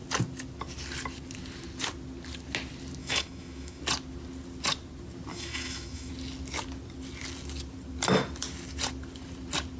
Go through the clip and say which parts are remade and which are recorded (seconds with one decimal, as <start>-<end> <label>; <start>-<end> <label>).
0.0-3.0 recorded; 3.0-3.8 remade; 3.8-5.3 recorded; 5.3-6.1 remade; 6.1-9.8 recorded